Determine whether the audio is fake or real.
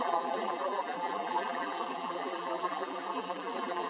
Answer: fake